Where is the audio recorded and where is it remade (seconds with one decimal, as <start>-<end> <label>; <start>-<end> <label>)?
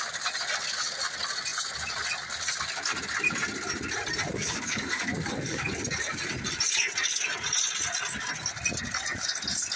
0.0-4.3 recorded; 4.3-5.7 remade; 5.7-9.8 recorded